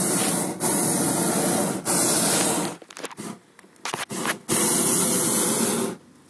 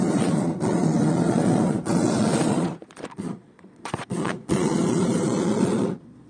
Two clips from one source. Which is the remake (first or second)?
second